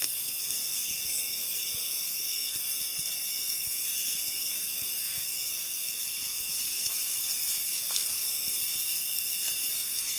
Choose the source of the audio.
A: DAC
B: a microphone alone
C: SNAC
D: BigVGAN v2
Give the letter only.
C